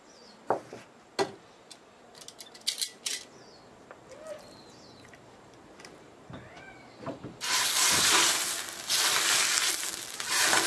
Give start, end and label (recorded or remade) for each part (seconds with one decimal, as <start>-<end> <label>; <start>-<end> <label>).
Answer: 0.0-10.7 recorded